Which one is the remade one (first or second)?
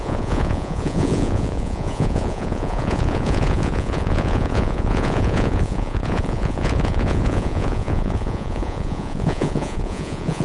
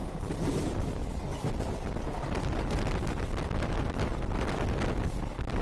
first